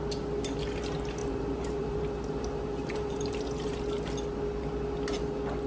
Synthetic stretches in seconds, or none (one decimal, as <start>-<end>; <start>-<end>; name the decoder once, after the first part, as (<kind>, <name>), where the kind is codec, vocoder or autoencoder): 1.2-3.8 (vocoder, BigVGAN v2)